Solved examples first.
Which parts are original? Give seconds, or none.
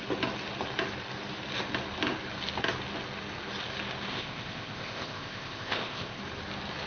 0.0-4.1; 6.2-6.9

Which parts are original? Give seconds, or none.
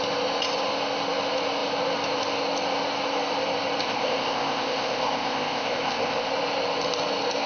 0.0-3.8; 6.3-7.5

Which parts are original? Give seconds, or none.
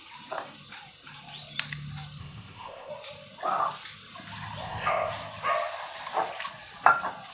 0.0-2.2; 2.9-4.6; 5.1-7.3